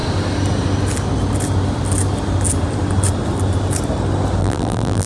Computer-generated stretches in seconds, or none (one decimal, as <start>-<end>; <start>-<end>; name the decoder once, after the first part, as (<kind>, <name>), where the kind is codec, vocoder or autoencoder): 4.4-5.1 (vocoder, BigVGAN v2)